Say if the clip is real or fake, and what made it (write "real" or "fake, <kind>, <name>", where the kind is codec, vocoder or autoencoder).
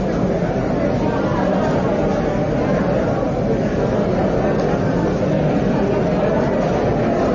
real